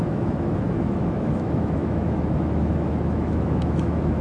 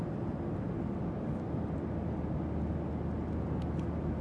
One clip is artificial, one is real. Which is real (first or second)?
second